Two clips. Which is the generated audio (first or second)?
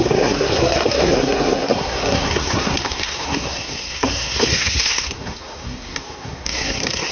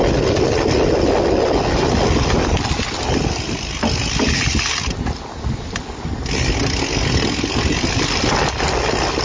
first